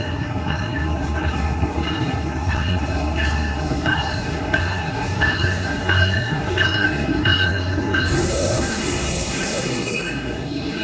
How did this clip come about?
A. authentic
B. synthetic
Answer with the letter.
B